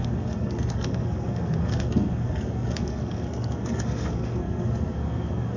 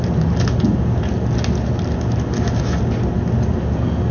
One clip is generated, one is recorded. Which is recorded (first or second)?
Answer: second